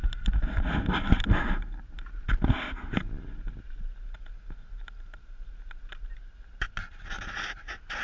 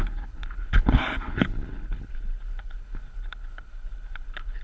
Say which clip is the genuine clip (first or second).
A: first